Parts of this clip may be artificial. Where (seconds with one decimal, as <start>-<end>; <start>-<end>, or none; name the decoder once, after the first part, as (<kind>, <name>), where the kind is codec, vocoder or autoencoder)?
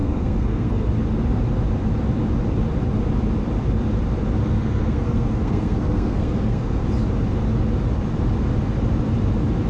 0.0-0.9 (codec, SNAC); 4.4-6.8